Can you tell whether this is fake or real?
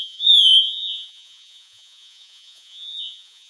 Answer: fake